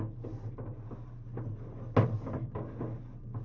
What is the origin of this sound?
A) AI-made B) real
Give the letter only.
B